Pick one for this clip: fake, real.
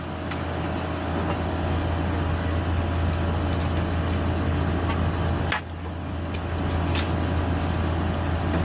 real